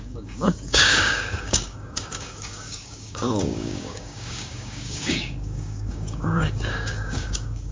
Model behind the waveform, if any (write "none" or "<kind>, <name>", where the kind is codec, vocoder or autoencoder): codec, DAC